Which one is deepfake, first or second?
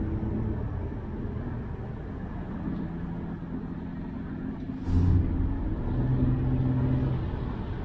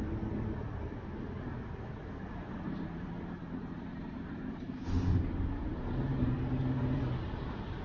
second